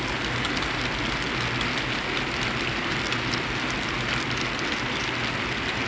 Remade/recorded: recorded